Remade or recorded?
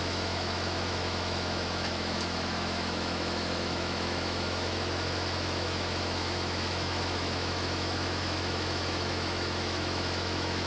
remade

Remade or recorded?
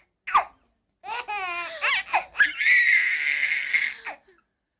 recorded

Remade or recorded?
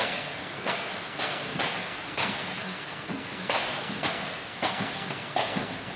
remade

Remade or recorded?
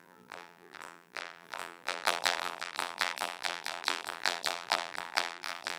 remade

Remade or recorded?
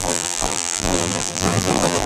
remade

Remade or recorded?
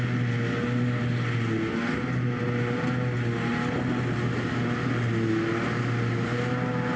recorded